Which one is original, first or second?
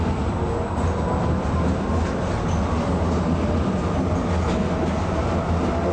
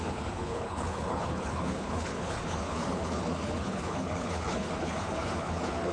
first